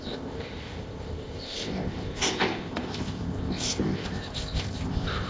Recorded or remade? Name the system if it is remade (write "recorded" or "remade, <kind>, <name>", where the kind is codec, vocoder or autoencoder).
remade, codec, ZipCodec